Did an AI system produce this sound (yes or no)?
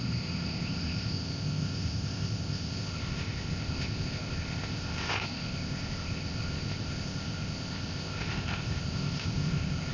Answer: yes